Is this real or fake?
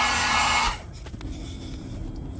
real